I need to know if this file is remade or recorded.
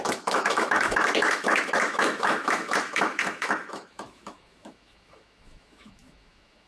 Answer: remade